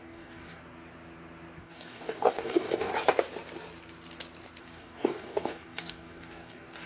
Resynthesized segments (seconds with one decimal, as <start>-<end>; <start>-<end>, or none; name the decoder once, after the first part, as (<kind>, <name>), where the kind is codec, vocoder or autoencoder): 0.0-0.6 (codec, DAC); 1.6-2.9; 4.6-6.9